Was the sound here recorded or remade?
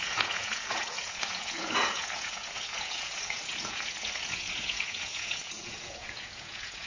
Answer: remade